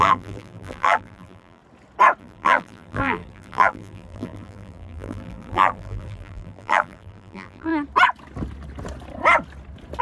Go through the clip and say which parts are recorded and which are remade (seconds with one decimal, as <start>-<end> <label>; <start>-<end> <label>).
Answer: 0.0-1.6 remade; 1.6-2.2 recorded; 2.2-7.7 remade; 7.7-10.0 recorded